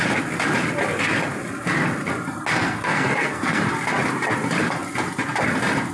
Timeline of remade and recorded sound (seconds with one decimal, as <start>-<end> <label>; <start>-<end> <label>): 0.0-2.6 recorded; 2.6-3.6 remade; 3.6-5.9 recorded